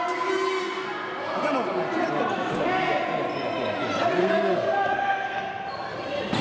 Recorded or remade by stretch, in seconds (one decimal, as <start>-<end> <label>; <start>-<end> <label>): 0.0-4.2 recorded; 4.2-5.4 remade; 5.4-6.4 recorded